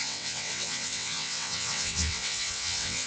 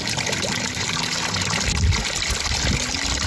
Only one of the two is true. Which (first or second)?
second